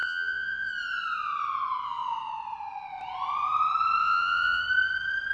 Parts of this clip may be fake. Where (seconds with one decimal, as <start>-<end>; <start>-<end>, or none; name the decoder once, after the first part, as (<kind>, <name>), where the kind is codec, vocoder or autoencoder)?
0.0-0.7 (vocoder, Vocos); 4.0-4.6